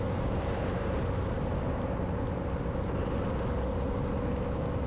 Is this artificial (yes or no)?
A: no